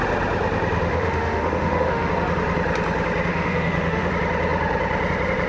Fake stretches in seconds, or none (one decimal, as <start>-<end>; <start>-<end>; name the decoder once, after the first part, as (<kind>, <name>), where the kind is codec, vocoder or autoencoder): 0.9-2.1 (autoencoder, DAC-VAE); 3.3-4.1

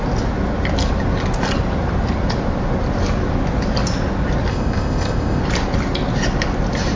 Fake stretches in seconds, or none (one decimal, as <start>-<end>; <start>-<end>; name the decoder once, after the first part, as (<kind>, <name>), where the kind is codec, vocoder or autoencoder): 4.5-5.4 (codec, ZipCodec)

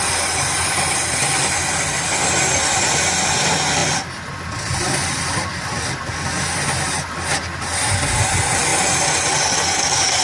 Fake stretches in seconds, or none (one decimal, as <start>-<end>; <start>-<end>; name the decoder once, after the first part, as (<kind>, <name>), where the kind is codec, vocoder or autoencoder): none

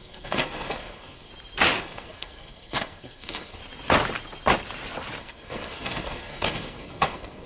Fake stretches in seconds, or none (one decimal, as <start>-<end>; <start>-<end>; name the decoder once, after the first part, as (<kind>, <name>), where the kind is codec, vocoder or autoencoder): 0.0-1.3 (codec, SNAC); 1.8-3.6; 5.2-7.5

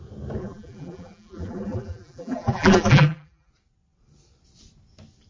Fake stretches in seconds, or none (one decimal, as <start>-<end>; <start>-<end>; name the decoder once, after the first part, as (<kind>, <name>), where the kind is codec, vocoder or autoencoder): 0.4-3.5 (vocoder, BigVGAN v2)

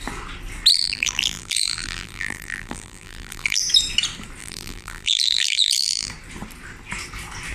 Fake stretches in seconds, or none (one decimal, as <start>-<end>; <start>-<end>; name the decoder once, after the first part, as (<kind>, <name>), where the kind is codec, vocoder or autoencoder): 0.7-3.6 (vocoder, BigVGAN v2); 4.4-6.1

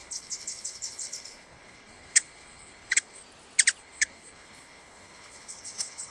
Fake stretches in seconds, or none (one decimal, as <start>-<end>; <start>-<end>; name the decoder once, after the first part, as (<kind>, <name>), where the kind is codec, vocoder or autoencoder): 0.0-3.2 (codec, HILCodec); 3.8-6.1

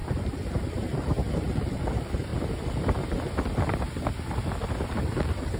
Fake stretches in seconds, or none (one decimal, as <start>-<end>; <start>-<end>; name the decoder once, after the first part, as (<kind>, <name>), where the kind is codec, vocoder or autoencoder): 0.0-2.3 (vocoder, BigVGAN v2); 5.0-5.6